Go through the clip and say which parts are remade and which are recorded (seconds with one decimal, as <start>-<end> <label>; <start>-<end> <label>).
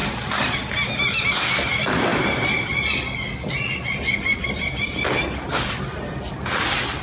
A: 0.0-7.0 recorded